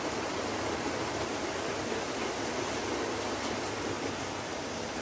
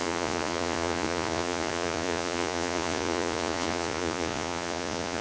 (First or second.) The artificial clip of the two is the second